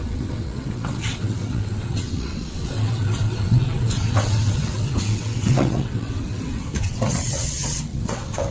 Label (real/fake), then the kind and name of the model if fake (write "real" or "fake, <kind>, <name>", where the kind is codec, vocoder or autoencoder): fake, vocoder, WaveNeXt